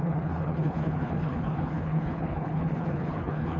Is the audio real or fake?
fake